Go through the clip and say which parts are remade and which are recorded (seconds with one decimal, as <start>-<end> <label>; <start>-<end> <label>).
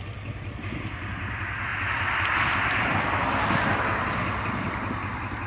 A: 0.0-5.5 remade